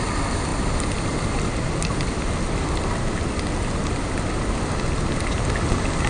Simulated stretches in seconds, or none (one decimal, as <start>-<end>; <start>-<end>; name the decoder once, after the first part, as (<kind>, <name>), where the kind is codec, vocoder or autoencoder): none

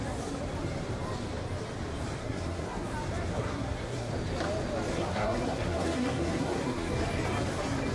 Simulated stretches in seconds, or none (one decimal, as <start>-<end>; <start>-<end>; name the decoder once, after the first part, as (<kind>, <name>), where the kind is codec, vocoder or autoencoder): 2.2-2.9 (codec, SNAC); 3.3-4.1; 4.9-6.9

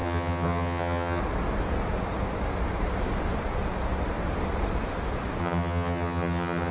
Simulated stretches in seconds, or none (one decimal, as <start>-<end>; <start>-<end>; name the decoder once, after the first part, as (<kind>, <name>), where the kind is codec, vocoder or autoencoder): 0.0-1.2 (vocoder, HiFi-GAN); 5.4-6.7